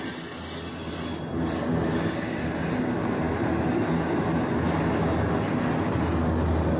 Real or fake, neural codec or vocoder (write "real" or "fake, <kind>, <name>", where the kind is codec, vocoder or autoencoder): real